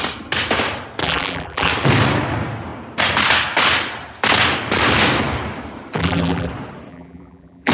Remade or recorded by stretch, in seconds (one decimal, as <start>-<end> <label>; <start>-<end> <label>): 0.0-1.0 recorded; 1.0-1.7 remade; 1.7-6.0 recorded; 6.0-6.5 remade; 6.5-6.9 recorded; 6.9-7.7 remade